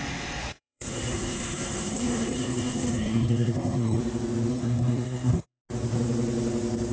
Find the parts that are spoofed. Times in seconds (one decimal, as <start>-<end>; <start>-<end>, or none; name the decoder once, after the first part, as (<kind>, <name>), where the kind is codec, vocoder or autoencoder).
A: 0.4-4.0 (codec, SNAC); 4.5-5.6